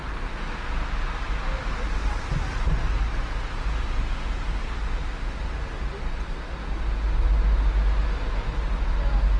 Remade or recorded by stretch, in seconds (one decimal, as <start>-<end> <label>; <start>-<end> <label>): 0.0-9.4 recorded